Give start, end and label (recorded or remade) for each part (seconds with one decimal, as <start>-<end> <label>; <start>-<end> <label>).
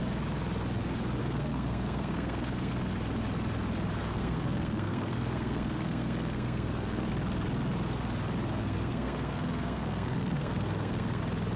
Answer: 0.0-1.2 recorded; 1.2-2.7 remade; 2.7-4.0 recorded; 4.0-7.1 remade; 7.1-8.6 recorded; 8.6-11.2 remade; 11.2-11.6 recorded